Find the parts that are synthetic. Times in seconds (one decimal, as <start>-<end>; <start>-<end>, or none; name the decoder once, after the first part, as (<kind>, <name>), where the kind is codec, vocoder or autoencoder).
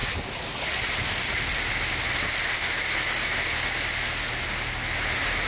none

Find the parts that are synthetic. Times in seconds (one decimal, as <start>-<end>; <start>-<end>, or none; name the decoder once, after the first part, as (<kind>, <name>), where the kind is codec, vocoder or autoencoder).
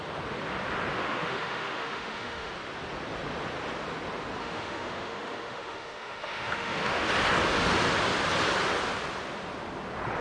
0.9-2.5 (autoencoder, DAC-VAE); 4.4-7.1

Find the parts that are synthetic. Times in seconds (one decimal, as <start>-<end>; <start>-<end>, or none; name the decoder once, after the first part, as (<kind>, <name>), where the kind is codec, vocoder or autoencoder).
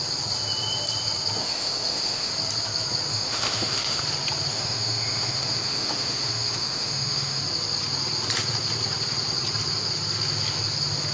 1.4-2.3 (autoencoder, DAC-VAE); 3.1-4.0; 4.5-7.4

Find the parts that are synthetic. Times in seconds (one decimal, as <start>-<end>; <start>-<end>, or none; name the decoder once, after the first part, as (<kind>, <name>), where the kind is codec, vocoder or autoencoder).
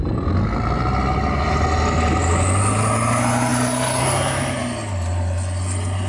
none